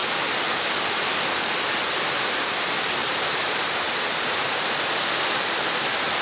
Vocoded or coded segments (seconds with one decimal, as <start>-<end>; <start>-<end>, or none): 3.0-4.7

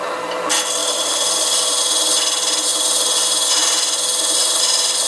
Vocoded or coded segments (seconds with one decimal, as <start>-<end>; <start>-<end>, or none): 0.8-1.8

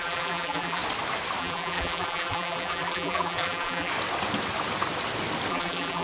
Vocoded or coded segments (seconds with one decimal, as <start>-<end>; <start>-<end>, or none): 0.0-0.8; 1.4-3.9; 5.5-6.0

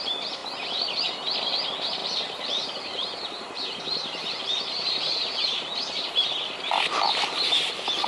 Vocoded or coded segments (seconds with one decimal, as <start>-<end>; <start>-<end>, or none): 2.0-6.3

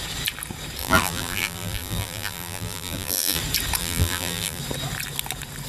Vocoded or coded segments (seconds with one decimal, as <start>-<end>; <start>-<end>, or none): 0.8-3.4; 3.8-4.6

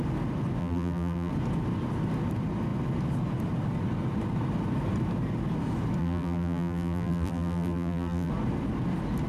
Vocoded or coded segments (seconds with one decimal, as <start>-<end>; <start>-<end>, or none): 0.6-1.3; 6.0-8.3

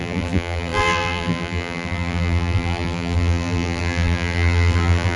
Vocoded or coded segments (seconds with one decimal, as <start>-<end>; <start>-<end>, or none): 0.0-5.2